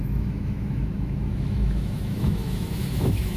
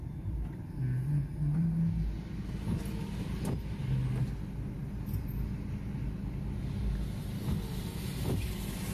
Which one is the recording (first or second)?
second